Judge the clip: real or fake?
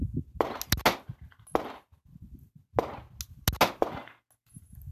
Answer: real